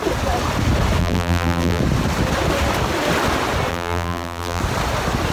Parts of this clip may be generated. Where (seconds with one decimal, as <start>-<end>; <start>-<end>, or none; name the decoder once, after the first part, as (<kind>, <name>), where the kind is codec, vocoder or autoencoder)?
1.0-1.8 (vocoder, BigVGAN v2); 3.7-4.6